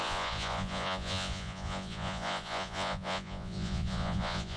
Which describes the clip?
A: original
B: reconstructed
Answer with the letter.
B